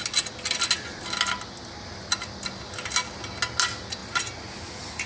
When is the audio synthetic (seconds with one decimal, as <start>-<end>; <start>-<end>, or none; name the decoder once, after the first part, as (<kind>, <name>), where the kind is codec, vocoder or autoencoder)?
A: none